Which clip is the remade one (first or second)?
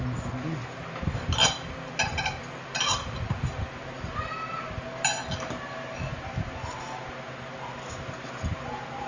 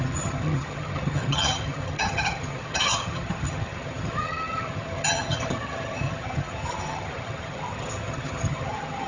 second